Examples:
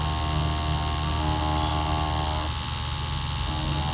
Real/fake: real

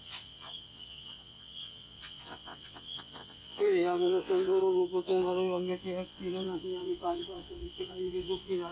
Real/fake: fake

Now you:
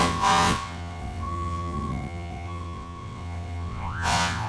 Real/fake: fake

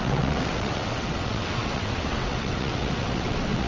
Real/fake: fake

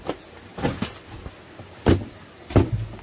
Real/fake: real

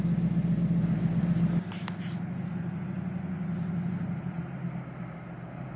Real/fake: real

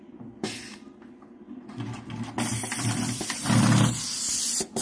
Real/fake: real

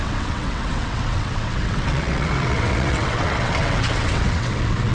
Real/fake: fake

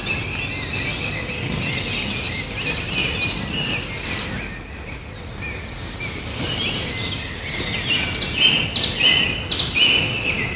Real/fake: real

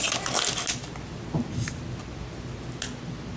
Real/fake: real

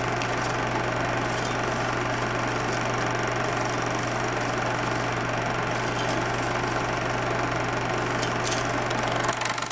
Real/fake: real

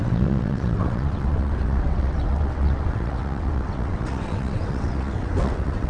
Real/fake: fake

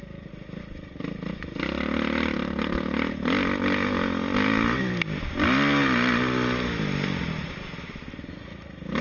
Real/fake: real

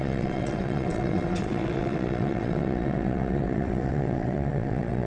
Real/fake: fake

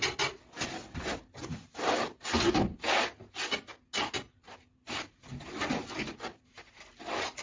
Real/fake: real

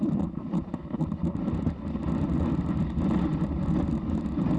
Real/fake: real